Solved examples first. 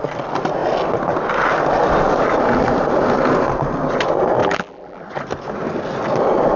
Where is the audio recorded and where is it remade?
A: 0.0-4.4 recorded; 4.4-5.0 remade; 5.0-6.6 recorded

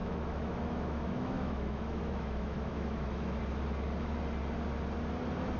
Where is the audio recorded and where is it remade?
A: 0.0-3.4 remade; 3.4-5.6 recorded

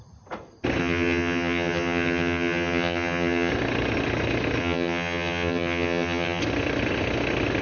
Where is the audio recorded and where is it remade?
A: 0.0-0.8 recorded; 0.8-3.5 remade; 3.5-4.6 recorded; 4.6-6.4 remade; 6.4-7.6 recorded

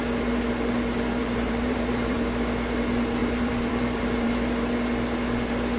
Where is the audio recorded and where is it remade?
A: 0.0-1.2 recorded; 1.2-2.2 remade; 2.2-3.2 recorded; 3.2-4.3 remade; 4.3-5.8 recorded

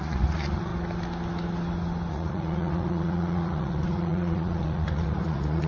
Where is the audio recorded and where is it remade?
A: 0.0-0.7 remade; 0.7-2.1 recorded; 2.1-5.7 remade

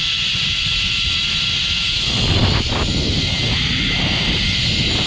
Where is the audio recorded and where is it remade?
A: 0.0-5.1 recorded

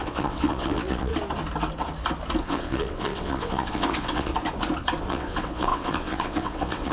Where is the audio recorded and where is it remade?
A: 0.0-1.1 remade; 1.1-2.4 recorded; 2.4-4.3 remade; 4.3-5.0 recorded; 5.0-6.9 remade

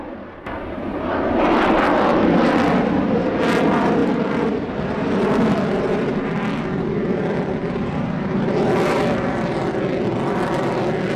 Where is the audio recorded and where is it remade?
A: 0.0-11.2 recorded